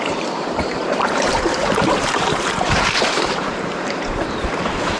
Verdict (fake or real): fake